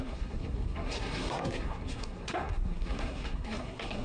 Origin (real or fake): fake